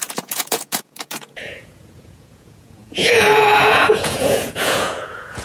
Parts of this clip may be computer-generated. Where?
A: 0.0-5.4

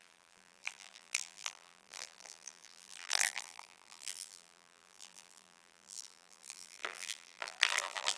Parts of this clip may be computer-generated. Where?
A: 0.0-8.2

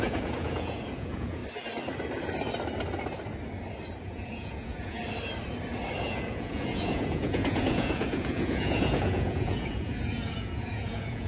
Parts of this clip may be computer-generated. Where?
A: 0.0-1.4; 4.0-5.0; 6.0-11.3

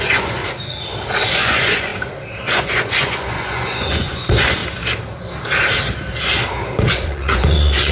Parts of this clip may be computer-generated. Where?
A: 0.0-0.4; 1.3-1.9; 2.4-4.6; 6.9-7.9

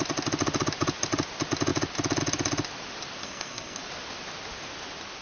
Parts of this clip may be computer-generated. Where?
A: 3.2-3.8

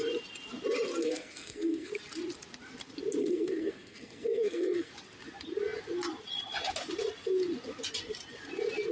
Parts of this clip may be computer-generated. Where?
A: 1.0-1.9; 3.2-4.9

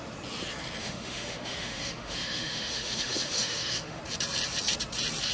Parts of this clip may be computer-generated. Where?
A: 0.8-4.0